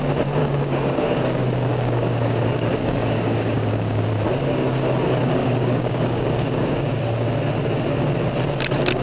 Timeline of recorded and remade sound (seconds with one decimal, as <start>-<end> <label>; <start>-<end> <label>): 0.0-0.4 recorded; 0.4-4.1 remade; 4.1-5.4 recorded; 5.4-7.0 remade; 7.0-9.0 recorded